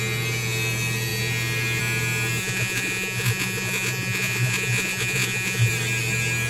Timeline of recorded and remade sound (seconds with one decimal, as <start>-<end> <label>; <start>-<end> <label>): 0.0-2.4 recorded; 2.4-5.7 remade; 5.7-6.5 recorded